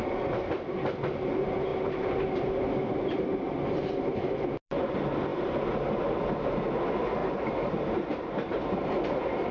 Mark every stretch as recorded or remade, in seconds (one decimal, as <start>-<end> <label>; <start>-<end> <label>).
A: 0.0-5.3 recorded; 5.3-5.9 remade; 5.9-7.2 recorded; 7.2-8.6 remade; 8.6-9.5 recorded